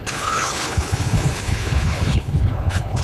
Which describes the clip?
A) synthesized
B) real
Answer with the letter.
A